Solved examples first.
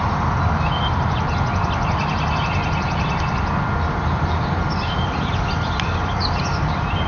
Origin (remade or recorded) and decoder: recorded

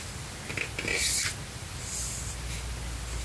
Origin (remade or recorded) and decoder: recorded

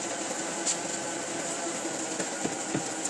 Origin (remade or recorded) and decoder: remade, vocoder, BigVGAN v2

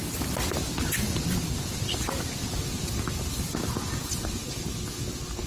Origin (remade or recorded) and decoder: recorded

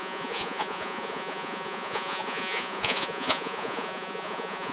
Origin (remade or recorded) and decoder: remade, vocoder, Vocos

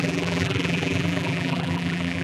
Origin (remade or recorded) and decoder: remade, vocoder, BigVGAN v2